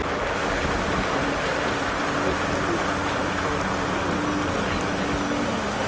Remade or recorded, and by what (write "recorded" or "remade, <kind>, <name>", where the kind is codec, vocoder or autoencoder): recorded